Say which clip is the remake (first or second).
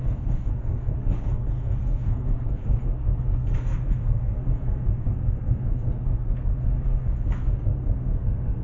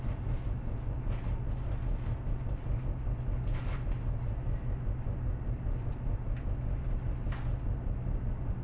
first